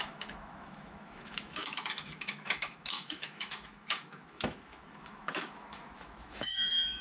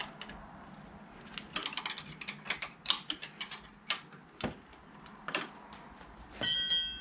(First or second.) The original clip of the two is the second